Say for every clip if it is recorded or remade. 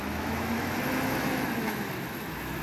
remade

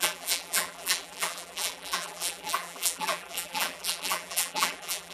remade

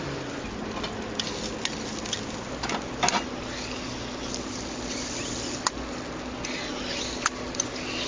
recorded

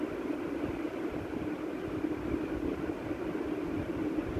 recorded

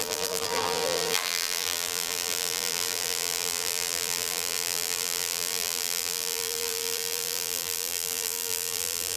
remade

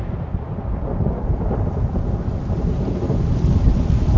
recorded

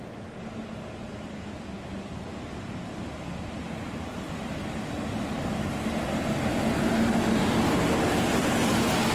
recorded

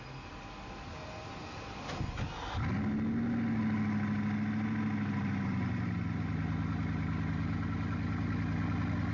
recorded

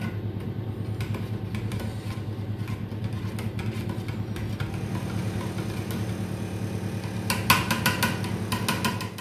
recorded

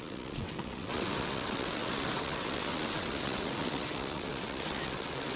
remade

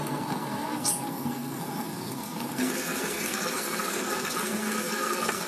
remade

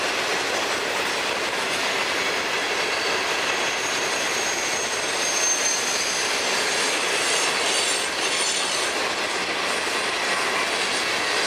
recorded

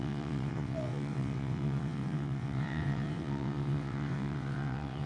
remade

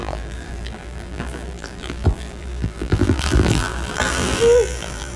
remade